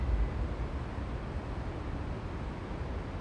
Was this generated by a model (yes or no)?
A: no